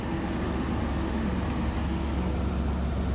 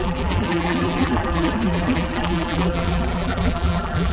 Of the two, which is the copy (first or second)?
second